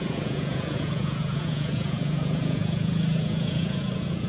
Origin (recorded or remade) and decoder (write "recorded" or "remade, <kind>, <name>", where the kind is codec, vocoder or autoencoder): remade, vocoder, Vocos